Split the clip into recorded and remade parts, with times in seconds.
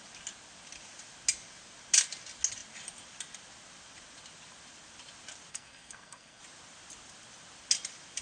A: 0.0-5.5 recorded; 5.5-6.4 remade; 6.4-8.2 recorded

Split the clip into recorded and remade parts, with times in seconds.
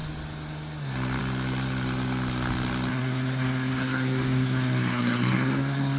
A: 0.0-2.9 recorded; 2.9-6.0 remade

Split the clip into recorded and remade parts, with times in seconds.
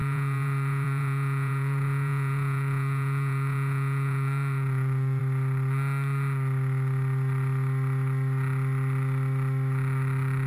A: 0.0-5.2 remade; 5.2-10.5 recorded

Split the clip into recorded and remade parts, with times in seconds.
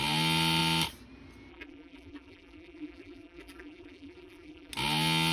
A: 0.0-1.5 recorded; 1.5-4.7 remade; 4.7-5.3 recorded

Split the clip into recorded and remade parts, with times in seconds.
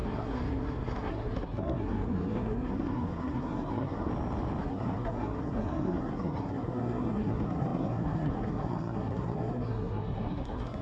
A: 0.0-4.1 remade; 4.1-4.6 recorded; 4.6-10.8 remade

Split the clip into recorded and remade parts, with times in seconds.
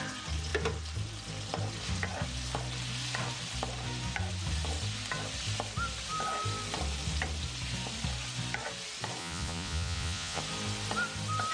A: 0.0-9.2 recorded; 9.2-10.4 remade; 10.4-11.5 recorded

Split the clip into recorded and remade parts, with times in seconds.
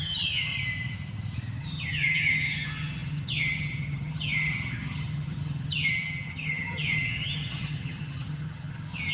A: 0.0-0.5 remade; 0.5-1.6 recorded; 1.6-9.1 remade